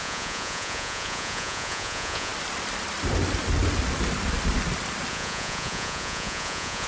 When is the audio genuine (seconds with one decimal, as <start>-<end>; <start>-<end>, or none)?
2.3-5.1